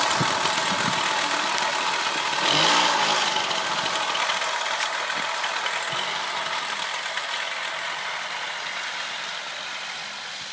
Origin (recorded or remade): recorded